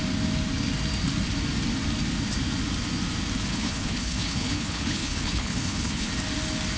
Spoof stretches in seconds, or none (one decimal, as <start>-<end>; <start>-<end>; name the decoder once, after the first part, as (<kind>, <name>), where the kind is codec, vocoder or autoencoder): 3.5-6.1 (codec, HILCodec)